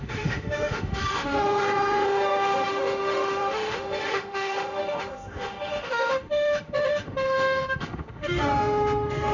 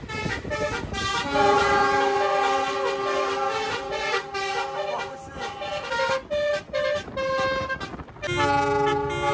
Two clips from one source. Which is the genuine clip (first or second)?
second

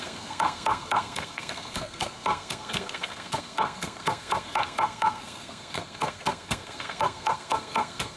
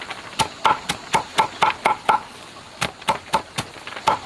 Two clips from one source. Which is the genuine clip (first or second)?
second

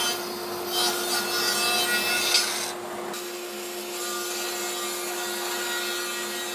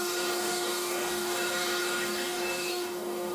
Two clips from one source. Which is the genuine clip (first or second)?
first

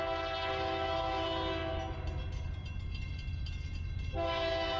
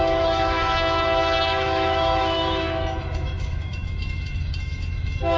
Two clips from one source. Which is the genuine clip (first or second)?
first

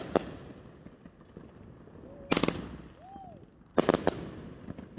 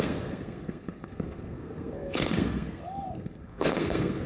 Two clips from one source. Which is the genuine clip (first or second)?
first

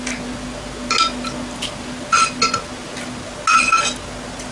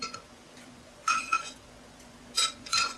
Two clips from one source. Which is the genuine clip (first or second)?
first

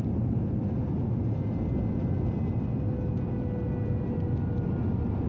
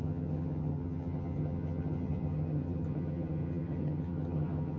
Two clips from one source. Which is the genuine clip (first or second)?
first